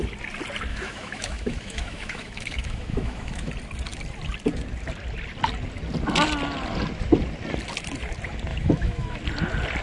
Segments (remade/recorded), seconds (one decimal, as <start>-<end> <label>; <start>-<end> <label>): 0.0-0.7 recorded; 0.7-3.5 remade; 3.5-8.5 recorded; 8.5-9.2 remade; 9.2-9.8 recorded